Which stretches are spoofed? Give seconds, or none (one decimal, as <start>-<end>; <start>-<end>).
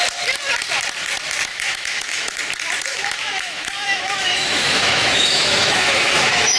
1.5-2.4; 2.9-6.6